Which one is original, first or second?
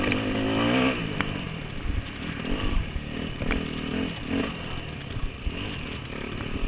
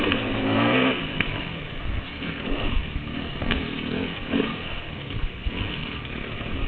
first